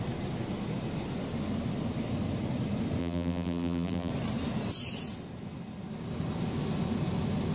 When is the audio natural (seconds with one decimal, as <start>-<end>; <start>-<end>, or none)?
0.0-3.0; 4.1-7.5